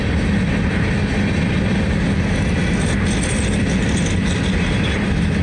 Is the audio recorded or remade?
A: recorded